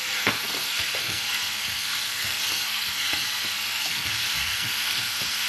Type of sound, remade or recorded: remade